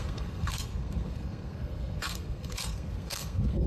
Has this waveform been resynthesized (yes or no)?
yes